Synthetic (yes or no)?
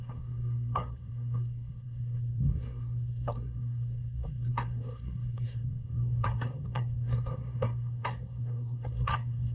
yes